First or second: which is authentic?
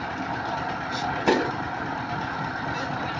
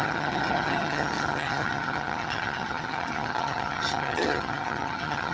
first